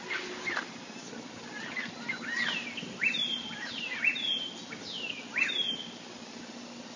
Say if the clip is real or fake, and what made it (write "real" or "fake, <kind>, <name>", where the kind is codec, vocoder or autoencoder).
real